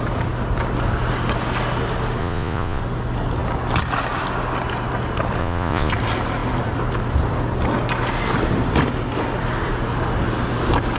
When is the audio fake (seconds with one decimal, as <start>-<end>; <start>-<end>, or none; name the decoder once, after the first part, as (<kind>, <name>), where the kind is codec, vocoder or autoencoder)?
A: 2.2-2.8 (vocoder, Vocos); 5.4-5.9